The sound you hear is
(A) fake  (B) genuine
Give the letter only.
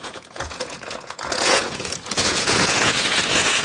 A